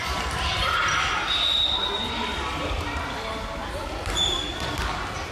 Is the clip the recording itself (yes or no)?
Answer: no